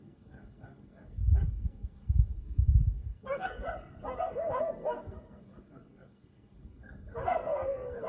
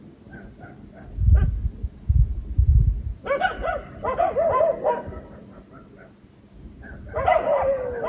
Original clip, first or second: second